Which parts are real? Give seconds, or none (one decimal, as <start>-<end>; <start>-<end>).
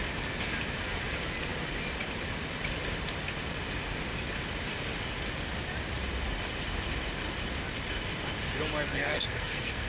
0.0-8.9